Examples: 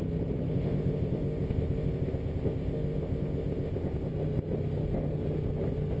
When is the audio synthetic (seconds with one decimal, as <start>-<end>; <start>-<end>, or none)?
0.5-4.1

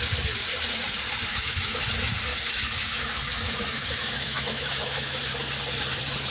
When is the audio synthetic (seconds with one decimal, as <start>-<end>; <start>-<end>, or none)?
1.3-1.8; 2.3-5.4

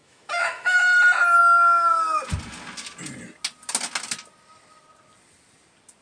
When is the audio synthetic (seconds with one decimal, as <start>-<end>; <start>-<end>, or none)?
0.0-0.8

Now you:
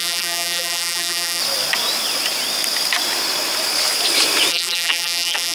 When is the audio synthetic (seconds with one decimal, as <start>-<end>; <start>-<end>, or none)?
0.0-1.4; 4.5-5.5